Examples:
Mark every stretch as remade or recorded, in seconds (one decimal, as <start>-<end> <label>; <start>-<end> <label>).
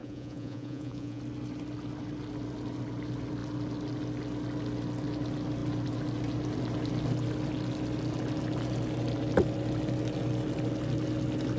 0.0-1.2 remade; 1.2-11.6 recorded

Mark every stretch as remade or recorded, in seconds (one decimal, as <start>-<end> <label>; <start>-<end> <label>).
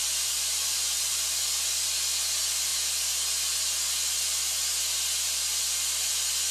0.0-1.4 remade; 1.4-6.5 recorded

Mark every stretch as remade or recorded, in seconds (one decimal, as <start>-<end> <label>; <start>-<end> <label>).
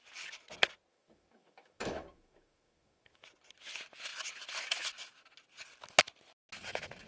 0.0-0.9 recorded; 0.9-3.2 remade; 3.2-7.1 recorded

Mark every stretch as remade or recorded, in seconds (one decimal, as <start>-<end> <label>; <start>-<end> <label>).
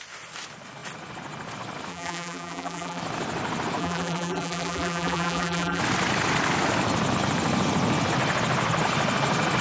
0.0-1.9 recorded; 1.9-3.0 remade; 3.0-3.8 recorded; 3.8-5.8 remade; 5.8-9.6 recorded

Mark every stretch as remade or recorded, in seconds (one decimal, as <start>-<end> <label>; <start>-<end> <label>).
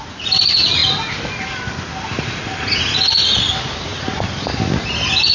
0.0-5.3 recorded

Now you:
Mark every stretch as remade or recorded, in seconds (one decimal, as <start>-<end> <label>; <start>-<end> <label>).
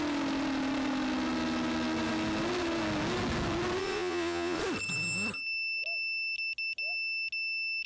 0.0-3.8 recorded; 3.8-4.6 remade; 4.6-7.9 recorded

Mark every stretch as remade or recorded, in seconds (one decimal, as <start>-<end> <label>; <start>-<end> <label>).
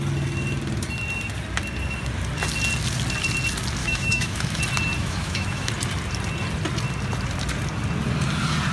0.0-3.8 recorded; 3.8-4.6 remade; 4.6-5.0 recorded; 5.0-5.7 remade; 5.7-8.7 recorded